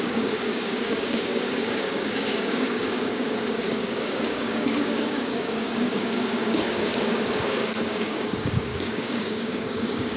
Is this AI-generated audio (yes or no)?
yes